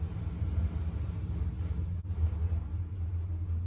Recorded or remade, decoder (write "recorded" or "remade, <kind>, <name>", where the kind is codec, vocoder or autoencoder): recorded